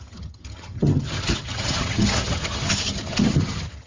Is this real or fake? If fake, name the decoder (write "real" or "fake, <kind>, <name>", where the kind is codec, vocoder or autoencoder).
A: fake, vocoder, HiFi-GAN